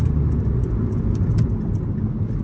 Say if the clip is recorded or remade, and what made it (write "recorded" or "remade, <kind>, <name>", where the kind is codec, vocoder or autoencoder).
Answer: remade, vocoder, BigVGAN v2